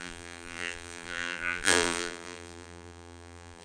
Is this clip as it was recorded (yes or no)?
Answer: no